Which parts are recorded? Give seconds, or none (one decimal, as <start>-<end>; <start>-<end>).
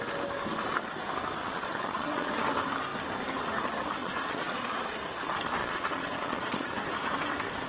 0.0-1.4; 2.3-4.0; 4.8-5.6; 6.8-7.7